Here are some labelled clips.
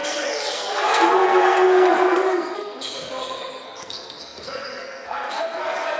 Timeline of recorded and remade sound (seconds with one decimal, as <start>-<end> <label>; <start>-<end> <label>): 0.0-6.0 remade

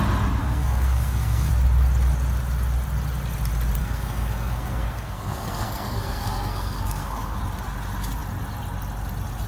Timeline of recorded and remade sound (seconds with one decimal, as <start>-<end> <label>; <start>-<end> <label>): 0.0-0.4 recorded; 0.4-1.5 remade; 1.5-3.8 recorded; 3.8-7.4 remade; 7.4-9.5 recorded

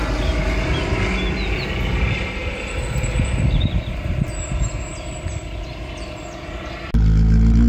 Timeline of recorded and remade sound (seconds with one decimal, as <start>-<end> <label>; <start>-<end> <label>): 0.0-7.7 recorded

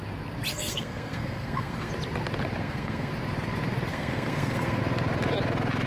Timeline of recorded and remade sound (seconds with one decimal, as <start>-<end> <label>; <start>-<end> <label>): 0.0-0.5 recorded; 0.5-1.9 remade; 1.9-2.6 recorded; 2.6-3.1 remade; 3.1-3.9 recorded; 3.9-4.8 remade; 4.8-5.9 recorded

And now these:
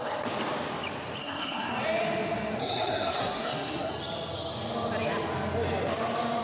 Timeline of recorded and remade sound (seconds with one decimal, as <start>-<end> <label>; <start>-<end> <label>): 0.0-1.2 recorded; 1.2-1.7 remade; 1.7-2.6 recorded; 2.6-3.9 remade; 3.9-6.4 recorded

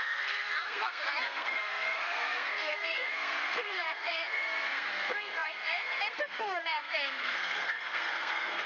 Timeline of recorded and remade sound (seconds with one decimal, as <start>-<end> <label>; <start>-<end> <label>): 0.0-8.7 remade

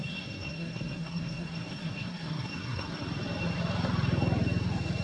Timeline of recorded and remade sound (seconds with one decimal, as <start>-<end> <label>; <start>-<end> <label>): 0.0-3.0 remade; 3.0-5.0 recorded

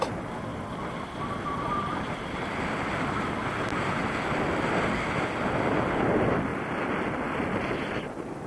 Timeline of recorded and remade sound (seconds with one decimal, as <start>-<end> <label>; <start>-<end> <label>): 0.0-8.5 recorded